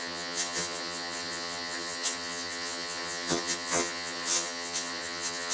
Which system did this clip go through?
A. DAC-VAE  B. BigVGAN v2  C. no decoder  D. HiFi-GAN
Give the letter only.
D